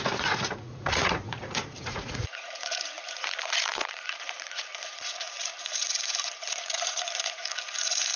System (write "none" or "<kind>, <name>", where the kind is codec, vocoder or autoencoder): vocoder, Vocos